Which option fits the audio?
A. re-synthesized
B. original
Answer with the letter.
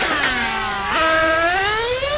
B